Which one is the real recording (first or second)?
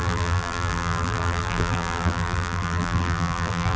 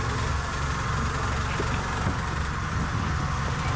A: second